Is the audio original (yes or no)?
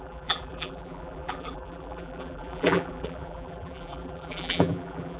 no